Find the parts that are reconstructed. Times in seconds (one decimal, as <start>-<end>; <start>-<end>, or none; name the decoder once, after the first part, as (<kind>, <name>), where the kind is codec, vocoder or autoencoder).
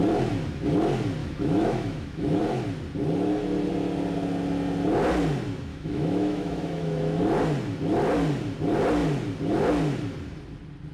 1.2-2.4 (autoencoder, DAC-VAE); 5.7-7.2